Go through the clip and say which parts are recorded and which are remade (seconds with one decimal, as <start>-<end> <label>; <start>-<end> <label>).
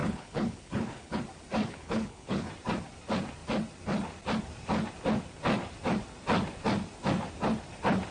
0.0-1.2 remade; 1.2-1.6 recorded; 1.6-2.5 remade; 2.5-8.1 recorded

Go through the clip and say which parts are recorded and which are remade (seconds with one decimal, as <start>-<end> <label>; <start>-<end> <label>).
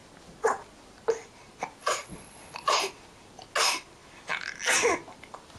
0.0-1.8 recorded; 1.8-2.8 remade; 2.8-5.6 recorded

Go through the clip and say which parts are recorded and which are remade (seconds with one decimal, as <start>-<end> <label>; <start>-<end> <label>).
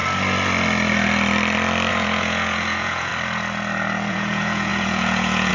0.0-1.9 recorded; 1.9-3.1 remade; 3.1-4.1 recorded; 4.1-5.5 remade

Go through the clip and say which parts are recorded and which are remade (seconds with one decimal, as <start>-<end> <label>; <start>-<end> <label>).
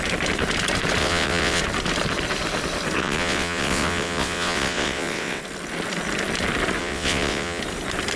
0.0-1.0 recorded; 1.0-1.6 remade; 1.6-3.0 recorded; 3.0-5.4 remade; 5.4-6.8 recorded; 6.8-7.6 remade; 7.6-8.2 recorded